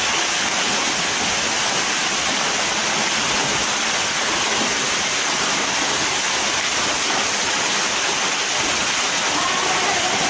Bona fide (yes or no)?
yes